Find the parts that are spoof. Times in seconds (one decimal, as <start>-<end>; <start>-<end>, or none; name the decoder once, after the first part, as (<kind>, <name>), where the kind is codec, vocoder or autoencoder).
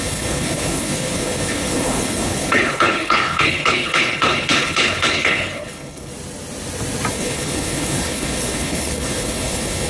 0.0-6.1 (codec, HILCodec); 7.1-9.9